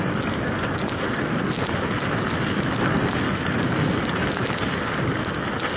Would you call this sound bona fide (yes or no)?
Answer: yes